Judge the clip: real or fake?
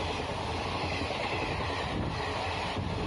real